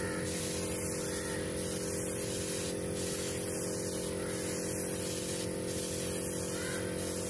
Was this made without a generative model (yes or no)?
yes